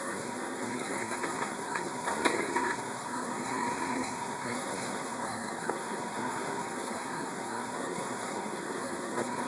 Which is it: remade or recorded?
remade